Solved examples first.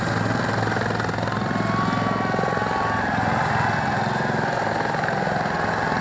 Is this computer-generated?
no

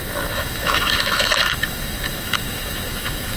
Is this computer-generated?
yes